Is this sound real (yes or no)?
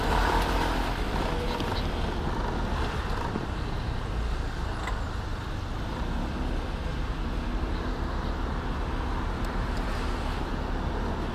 yes